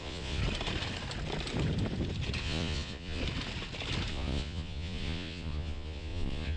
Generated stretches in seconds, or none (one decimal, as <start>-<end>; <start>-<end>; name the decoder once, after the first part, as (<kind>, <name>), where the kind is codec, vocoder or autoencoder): 0.0-0.4 (vocoder, Vocos); 2.4-3.2; 4.1-6.6